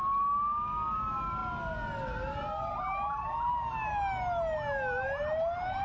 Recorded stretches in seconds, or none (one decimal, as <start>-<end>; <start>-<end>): 0.0-5.8